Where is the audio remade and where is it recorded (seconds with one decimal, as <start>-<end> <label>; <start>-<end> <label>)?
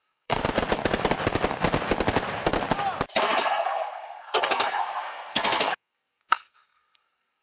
0.0-0.4 remade; 0.4-3.2 recorded; 3.2-7.4 remade